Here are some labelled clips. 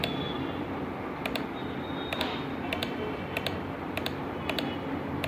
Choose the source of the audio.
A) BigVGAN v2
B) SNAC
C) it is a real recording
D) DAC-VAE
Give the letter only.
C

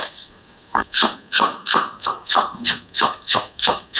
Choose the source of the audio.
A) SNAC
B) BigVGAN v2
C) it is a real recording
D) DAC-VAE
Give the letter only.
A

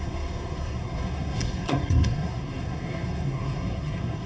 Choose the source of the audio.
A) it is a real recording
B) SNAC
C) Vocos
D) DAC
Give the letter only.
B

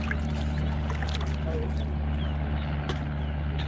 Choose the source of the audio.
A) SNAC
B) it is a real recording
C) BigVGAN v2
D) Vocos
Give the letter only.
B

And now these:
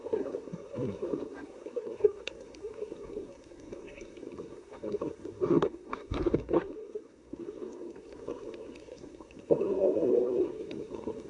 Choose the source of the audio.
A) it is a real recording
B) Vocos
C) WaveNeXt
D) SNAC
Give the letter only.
D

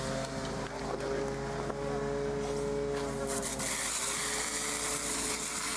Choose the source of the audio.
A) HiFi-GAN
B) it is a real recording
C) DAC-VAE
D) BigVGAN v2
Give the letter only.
B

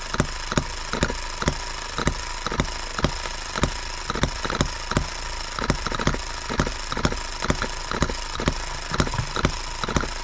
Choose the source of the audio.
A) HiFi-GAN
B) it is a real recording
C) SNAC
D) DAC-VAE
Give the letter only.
B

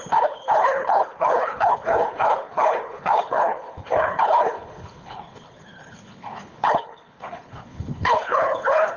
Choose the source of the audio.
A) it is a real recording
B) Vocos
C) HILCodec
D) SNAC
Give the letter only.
C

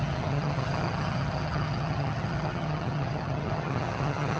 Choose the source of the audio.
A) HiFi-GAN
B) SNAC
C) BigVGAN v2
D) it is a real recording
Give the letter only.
A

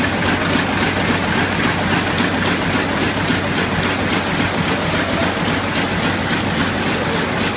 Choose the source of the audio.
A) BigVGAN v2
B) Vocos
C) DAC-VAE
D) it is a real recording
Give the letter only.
D